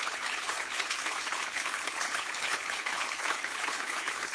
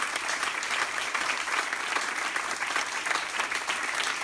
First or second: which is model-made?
first